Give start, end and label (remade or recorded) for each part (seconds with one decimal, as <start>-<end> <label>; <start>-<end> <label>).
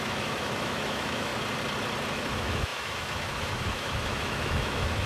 0.0-1.3 remade; 1.3-2.1 recorded; 2.1-5.1 remade